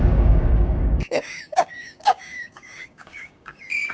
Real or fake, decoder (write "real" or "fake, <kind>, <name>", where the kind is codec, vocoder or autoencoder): fake, codec, DAC